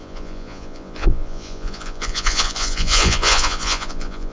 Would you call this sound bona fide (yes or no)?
no